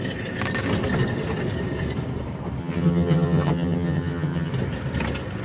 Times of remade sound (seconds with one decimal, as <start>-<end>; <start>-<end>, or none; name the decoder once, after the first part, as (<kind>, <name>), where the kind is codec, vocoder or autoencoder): 2.6-4.5 (vocoder, HiFi-GAN)